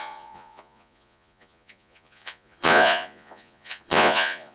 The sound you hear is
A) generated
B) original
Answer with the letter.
A